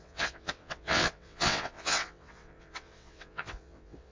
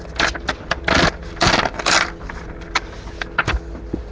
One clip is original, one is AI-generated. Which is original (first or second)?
second